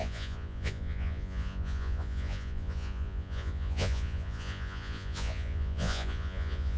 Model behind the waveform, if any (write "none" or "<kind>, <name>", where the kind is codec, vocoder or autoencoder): vocoder, Vocos